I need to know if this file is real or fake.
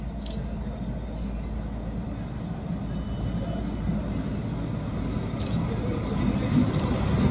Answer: real